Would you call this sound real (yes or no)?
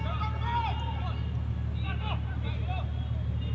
yes